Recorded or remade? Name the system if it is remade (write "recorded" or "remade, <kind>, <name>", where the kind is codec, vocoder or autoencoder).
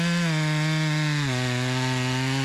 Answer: recorded